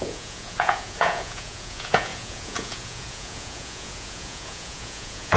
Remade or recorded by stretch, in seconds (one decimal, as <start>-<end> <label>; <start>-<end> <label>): 0.0-5.4 remade